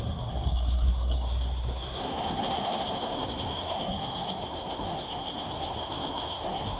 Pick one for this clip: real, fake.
fake